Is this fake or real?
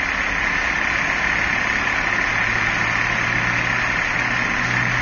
real